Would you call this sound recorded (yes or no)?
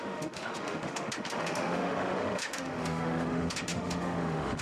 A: no